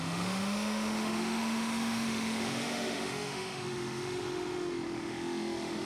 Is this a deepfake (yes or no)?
yes